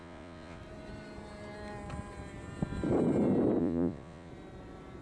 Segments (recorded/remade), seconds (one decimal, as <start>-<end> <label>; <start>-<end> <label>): 0.0-0.6 remade; 0.6-3.6 recorded; 3.6-4.3 remade; 4.3-5.0 recorded